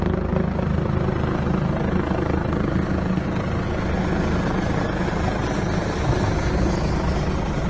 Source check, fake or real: real